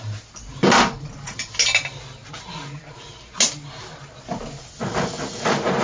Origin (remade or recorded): recorded